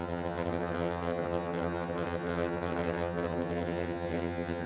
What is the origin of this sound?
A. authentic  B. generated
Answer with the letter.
B